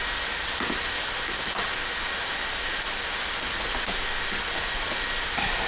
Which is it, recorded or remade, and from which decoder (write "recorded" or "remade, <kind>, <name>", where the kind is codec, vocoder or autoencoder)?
recorded